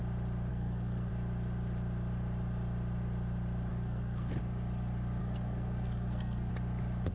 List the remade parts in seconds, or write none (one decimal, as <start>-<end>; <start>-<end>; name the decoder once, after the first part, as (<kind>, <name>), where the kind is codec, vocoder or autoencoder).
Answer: 0.5-1.1 (codec, SNAC); 3.7-4.3; 5.2-6.5